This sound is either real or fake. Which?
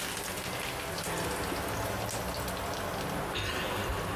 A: real